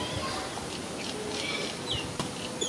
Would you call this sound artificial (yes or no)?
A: no